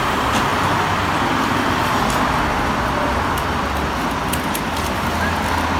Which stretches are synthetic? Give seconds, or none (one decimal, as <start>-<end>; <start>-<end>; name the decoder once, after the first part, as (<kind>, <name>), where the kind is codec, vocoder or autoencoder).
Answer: none